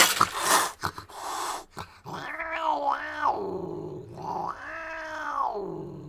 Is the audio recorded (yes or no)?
yes